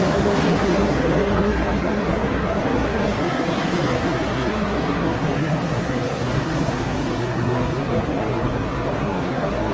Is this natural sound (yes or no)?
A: no